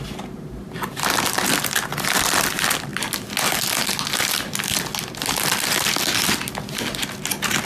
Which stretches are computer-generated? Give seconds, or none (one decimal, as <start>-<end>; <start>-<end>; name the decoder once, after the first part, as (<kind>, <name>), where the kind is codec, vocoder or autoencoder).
none